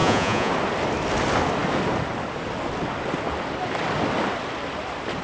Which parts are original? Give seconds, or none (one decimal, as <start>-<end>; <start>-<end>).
0.5-5.2